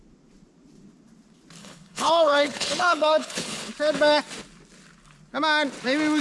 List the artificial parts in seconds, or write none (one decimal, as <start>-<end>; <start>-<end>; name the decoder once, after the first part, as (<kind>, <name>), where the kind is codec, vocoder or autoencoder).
1.6-3.7 (codec, HILCodec)